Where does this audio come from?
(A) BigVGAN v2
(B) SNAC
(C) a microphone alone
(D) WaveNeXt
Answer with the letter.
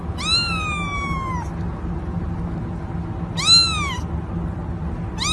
C